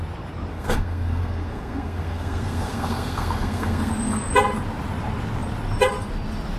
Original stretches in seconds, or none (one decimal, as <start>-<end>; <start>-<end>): 0.0-0.5; 3.9-6.6